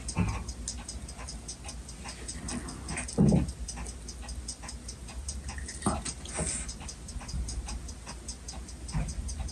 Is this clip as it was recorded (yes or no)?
yes